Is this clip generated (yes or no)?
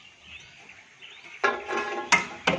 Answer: no